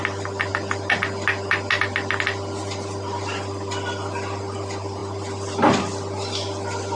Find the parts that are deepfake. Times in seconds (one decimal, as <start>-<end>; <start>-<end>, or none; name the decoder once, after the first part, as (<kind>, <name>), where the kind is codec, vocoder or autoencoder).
none